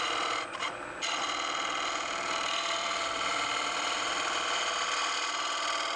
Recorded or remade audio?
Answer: remade